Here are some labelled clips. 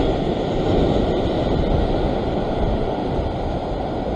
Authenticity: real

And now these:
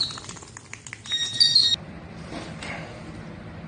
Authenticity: real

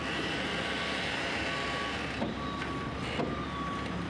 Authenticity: real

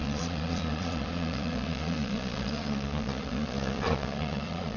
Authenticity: fake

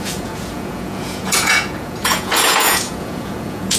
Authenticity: fake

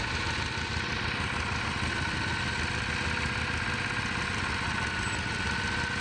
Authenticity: real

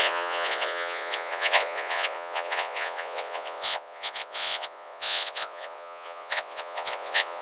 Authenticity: fake